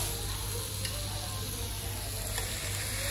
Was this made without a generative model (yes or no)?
yes